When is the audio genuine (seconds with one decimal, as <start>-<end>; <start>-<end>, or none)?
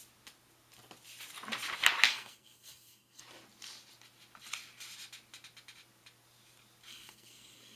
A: 0.0-2.1; 3.2-6.9